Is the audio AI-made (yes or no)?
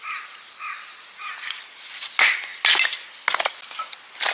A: no